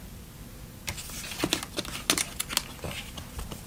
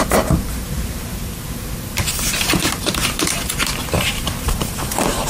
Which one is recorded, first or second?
first